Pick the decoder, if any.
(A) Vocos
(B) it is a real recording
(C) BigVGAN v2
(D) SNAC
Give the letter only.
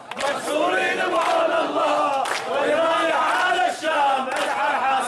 B